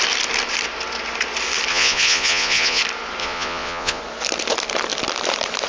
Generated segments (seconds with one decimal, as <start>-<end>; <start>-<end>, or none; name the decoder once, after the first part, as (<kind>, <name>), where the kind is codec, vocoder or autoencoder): 1.7-2.8 (vocoder, Vocos); 3.2-4.0